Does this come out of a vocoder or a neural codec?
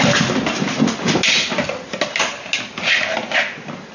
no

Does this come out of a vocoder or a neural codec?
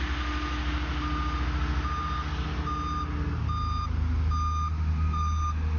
no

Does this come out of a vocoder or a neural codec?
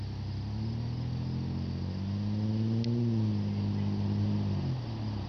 no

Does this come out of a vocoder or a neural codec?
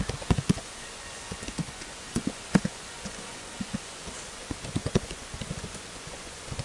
yes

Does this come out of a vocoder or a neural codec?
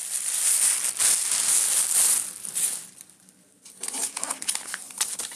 no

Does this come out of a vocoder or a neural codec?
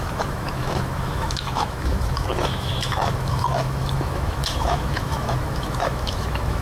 yes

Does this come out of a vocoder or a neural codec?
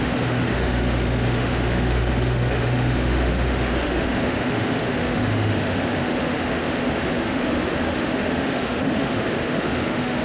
yes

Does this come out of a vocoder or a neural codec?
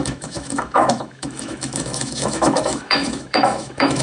yes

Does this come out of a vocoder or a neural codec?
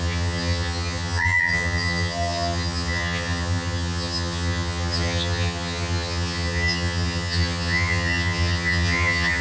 yes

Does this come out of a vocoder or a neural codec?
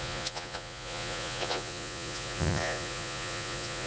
yes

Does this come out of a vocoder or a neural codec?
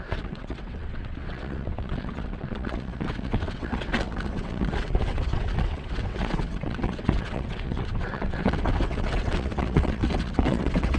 yes